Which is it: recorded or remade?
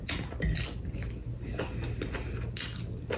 recorded